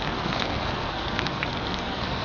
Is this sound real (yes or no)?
no